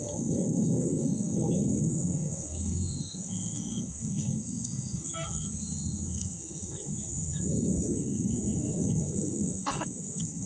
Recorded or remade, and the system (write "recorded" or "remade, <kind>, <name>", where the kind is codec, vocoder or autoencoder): remade, codec, SNAC